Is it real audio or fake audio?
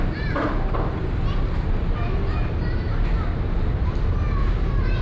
real